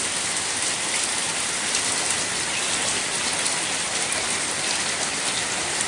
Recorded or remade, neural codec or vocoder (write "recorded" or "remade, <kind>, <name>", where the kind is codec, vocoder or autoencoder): recorded